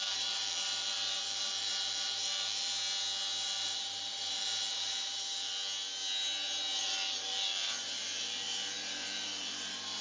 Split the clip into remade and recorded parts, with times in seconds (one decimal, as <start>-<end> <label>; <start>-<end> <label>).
0.0-2.7 remade; 2.7-3.4 recorded; 3.4-5.5 remade; 5.5-6.8 recorded; 6.8-10.0 remade